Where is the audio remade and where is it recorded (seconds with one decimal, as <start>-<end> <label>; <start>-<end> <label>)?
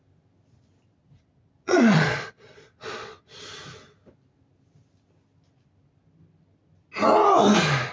0.0-1.0 recorded; 1.0-3.4 remade; 3.4-7.9 recorded